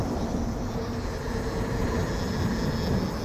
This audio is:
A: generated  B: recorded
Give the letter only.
B